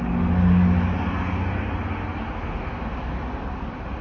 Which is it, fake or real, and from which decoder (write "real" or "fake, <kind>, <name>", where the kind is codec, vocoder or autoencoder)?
real